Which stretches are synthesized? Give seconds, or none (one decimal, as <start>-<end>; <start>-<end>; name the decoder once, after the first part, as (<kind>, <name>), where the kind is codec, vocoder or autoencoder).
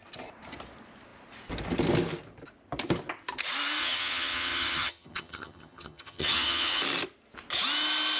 3.8-6.8 (vocoder, HiFi-GAN)